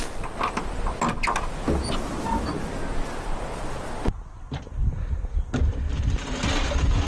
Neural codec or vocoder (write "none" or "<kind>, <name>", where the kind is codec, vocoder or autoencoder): none